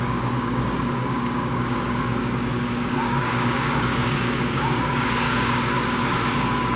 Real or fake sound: fake